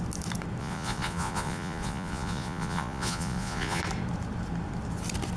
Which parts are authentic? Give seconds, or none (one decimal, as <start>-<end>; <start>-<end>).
0.0-0.6; 3.8-5.4